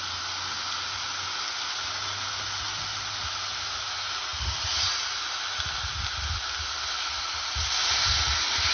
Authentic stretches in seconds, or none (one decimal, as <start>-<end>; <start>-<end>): 0.0-8.7